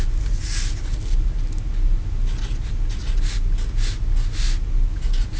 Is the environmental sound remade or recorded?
recorded